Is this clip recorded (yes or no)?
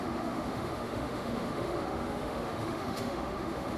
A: no